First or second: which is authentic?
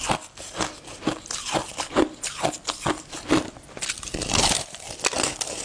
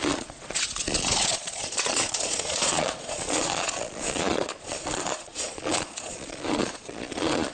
first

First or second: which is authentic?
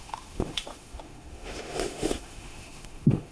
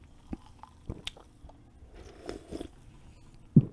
second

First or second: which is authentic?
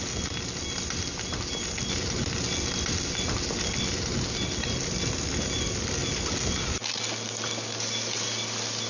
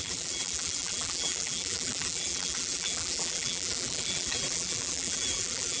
first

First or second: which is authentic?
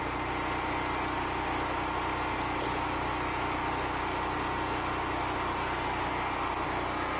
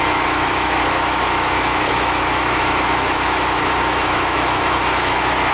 first